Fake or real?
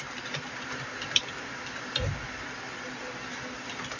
real